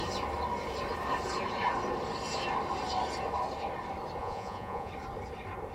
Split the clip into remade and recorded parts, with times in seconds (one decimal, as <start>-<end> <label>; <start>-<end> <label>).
0.0-4.2 recorded; 4.2-4.9 remade; 4.9-5.7 recorded

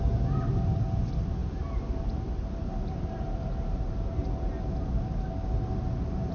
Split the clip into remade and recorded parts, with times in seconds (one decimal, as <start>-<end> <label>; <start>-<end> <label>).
0.0-4.2 remade; 4.2-6.3 recorded